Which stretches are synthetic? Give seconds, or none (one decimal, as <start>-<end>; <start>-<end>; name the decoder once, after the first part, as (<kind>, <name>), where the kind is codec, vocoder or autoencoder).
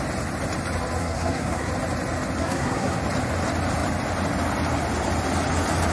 1.0-1.7 (codec, SNAC); 2.4-3.0